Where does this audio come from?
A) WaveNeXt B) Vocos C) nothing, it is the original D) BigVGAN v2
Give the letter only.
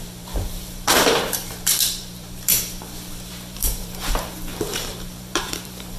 D